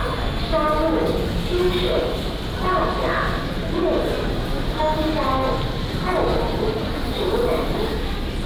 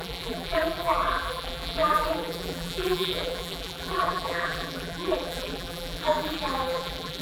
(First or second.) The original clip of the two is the first